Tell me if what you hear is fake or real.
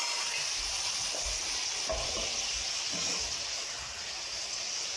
real